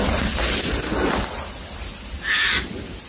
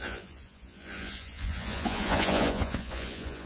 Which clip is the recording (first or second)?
first